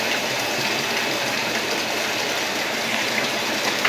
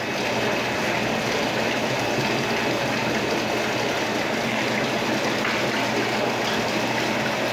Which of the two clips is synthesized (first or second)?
first